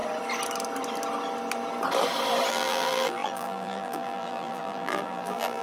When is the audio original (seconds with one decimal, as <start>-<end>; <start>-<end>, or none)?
0.0-2.5